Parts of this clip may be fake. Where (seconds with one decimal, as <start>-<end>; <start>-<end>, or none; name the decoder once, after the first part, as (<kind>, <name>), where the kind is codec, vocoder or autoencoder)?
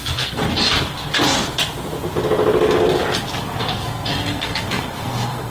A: 0.0-0.4 (codec, SNAC); 3.4-5.5